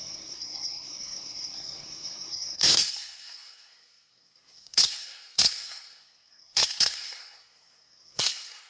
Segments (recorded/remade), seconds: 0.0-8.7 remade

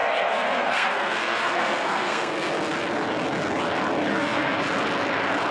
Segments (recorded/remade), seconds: 0.0-2.5 remade; 2.5-4.1 recorded; 4.1-4.6 remade; 4.6-5.5 recorded